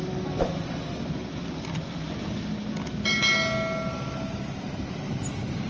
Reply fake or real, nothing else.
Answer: real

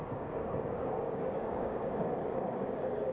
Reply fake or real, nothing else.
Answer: fake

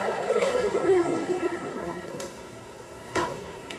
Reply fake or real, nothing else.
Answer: fake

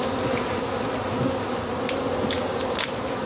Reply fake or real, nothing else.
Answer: real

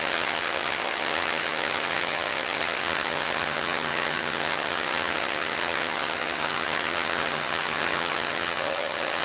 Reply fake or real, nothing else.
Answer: fake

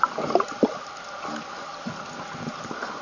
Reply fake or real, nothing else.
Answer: real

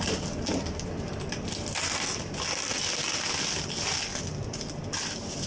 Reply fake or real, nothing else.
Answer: real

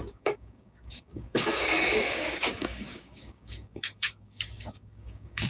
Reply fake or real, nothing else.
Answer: fake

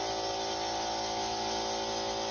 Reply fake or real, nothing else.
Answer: real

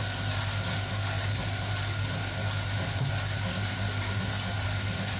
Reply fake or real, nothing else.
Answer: real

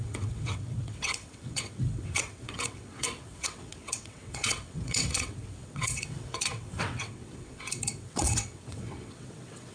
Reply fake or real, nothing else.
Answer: fake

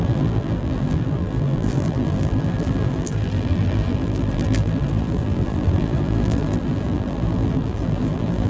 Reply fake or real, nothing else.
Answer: fake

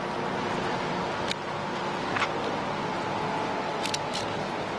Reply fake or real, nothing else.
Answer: real